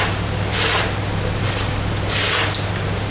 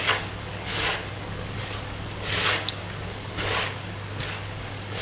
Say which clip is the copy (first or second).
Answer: second